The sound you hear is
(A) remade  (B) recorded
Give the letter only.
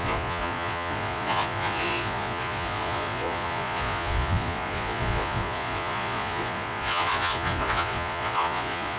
A